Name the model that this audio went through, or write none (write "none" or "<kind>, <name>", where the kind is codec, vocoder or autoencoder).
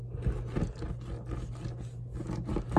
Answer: none